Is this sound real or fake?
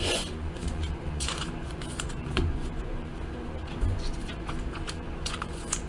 fake